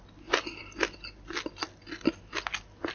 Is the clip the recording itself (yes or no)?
yes